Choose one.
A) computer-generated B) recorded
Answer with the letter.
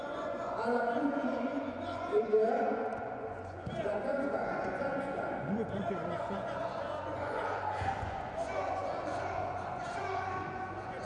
A